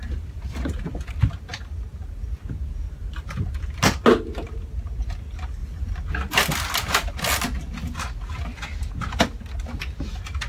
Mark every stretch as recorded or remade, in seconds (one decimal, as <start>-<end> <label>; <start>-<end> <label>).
0.0-10.5 recorded

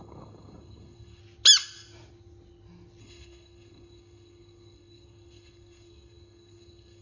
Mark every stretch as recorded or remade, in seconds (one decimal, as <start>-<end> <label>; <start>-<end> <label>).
0.0-1.2 remade; 1.2-3.0 recorded; 3.0-7.0 remade

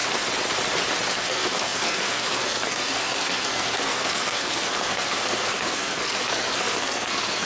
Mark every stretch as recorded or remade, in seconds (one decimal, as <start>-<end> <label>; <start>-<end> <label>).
0.0-1.1 recorded; 1.1-7.5 remade